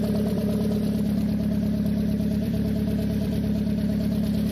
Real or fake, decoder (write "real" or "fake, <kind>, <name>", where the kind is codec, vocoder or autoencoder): fake, vocoder, BigVGAN v2